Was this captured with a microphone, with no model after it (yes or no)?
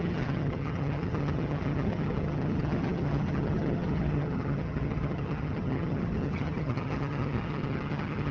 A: no